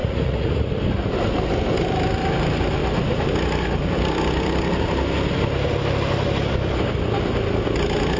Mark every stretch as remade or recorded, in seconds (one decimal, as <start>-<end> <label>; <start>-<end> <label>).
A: 0.0-0.7 remade; 0.7-8.2 recorded